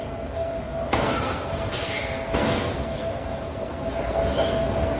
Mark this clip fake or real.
fake